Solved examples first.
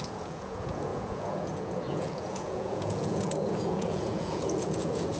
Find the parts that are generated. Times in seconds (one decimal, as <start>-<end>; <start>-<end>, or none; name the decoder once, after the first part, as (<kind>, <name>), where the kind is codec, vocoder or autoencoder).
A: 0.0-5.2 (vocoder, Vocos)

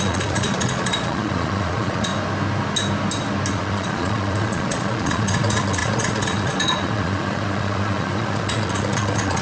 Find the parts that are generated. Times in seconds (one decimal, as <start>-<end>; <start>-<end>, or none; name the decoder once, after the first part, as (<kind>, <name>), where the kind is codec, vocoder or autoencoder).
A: 0.0-2.1 (vocoder, Vocos); 3.5-9.4

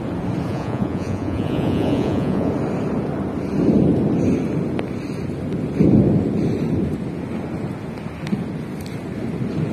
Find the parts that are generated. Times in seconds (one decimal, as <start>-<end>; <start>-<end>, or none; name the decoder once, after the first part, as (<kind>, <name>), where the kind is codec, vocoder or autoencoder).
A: 0.5-2.5 (vocoder, Vocos)